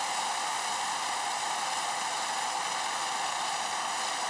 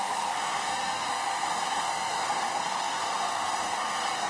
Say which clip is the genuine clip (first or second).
first